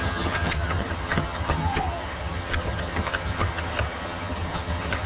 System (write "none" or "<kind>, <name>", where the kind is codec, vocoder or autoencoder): vocoder, HiFi-GAN